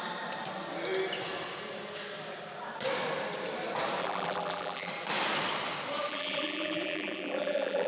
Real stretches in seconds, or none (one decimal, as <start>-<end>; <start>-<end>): 0.0-4.0; 4.9-6.1